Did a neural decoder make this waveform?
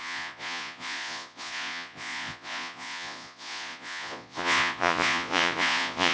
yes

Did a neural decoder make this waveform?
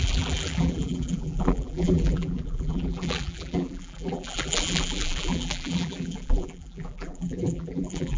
yes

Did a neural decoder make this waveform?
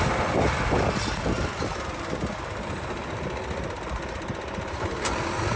yes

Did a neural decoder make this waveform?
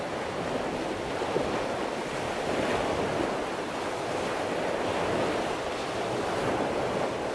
no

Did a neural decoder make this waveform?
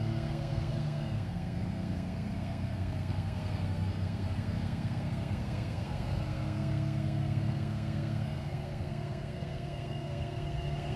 yes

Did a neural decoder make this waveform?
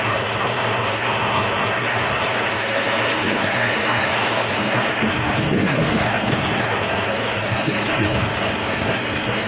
yes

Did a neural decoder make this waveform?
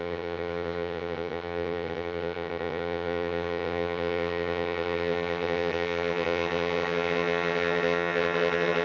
yes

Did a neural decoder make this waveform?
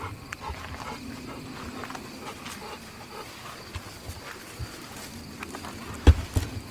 no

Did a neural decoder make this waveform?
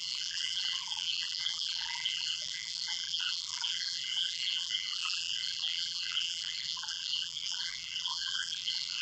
yes